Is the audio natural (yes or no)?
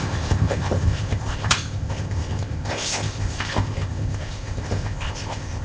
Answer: no